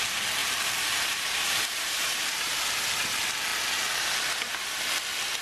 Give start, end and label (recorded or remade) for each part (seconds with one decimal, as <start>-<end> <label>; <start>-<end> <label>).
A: 0.0-0.4 recorded; 0.4-2.7 remade; 2.7-5.4 recorded